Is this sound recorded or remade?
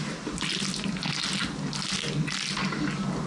recorded